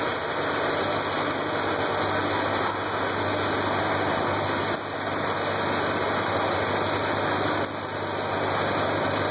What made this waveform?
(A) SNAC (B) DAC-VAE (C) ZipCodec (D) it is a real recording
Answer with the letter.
D